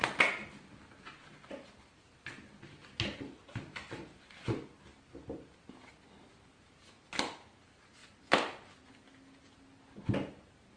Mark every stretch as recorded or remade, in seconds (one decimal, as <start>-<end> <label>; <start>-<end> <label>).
0.0-10.8 recorded